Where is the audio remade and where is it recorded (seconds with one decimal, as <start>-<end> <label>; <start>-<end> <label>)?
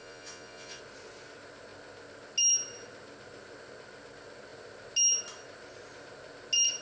0.0-0.8 remade; 0.8-6.8 recorded